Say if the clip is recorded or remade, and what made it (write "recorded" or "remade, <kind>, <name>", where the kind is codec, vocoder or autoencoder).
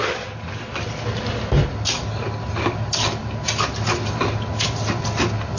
recorded